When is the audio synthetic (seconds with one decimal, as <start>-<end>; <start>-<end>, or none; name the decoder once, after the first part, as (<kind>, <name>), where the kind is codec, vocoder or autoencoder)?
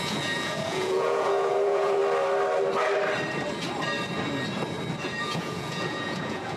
0.0-2.0 (vocoder, Vocos); 5.2-6.6